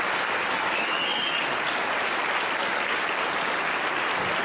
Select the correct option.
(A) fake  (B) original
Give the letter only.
B